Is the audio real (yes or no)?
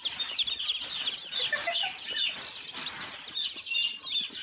yes